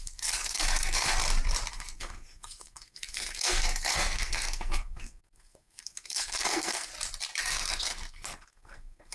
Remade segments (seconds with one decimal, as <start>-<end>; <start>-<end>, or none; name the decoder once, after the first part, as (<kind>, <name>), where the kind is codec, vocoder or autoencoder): 0.0-1.2 (codec, SNAC); 1.7-6.9; 7.4-9.1